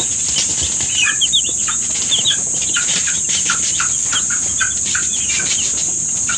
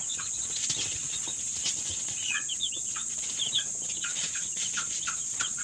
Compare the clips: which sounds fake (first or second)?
second